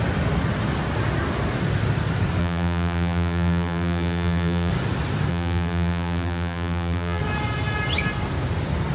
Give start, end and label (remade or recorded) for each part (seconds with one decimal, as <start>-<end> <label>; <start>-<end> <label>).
0.0-2.4 recorded; 2.4-4.7 remade; 4.7-5.3 recorded; 5.3-7.2 remade; 7.2-8.9 recorded